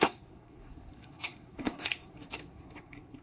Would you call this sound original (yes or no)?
no